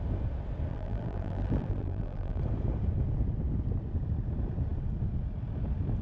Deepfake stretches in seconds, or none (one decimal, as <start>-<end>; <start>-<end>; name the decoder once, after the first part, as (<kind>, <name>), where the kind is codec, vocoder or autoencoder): 0.7-2.4 (vocoder, BigVGAN v2)